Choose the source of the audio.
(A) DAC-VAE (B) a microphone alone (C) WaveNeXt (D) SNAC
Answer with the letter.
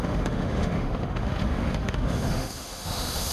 A